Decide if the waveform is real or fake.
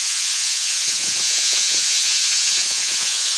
fake